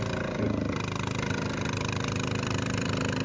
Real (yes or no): yes